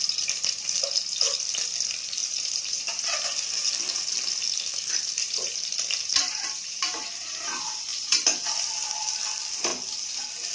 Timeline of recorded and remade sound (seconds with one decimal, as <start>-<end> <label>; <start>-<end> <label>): 0.0-2.2 recorded; 2.2-3.7 remade; 3.7-5.2 recorded; 5.2-6.8 remade; 6.8-10.5 recorded